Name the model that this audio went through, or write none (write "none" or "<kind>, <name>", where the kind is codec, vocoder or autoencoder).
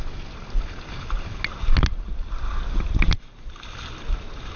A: none